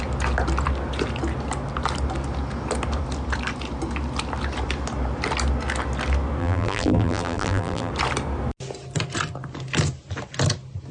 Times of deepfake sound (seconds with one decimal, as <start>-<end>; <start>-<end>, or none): 6.4-7.9